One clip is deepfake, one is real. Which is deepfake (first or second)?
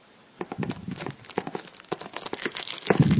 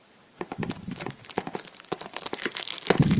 second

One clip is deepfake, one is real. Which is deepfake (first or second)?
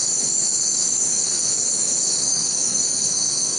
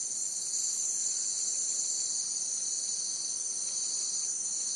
first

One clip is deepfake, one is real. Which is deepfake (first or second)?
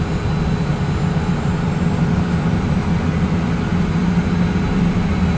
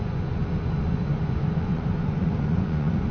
second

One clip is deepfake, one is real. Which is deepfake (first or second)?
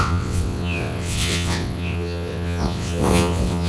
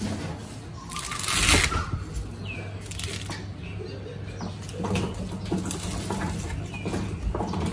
first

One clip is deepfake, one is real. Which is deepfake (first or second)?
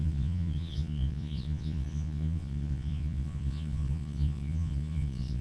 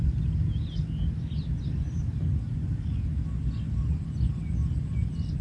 first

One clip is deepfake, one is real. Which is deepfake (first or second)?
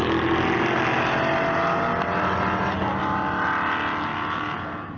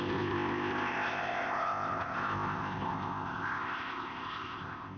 second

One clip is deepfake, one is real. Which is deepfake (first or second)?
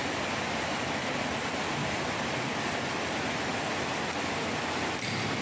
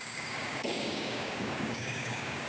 second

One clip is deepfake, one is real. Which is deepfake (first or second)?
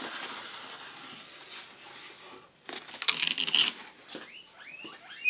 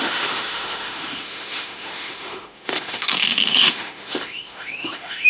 second